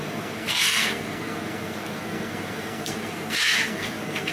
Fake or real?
fake